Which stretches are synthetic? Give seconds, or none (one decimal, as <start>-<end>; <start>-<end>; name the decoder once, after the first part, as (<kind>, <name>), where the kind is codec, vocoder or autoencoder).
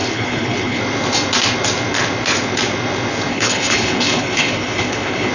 0.0-0.8 (codec, HILCodec); 3.3-5.3